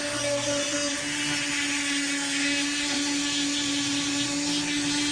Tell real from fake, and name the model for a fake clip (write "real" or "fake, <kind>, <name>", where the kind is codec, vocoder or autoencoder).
real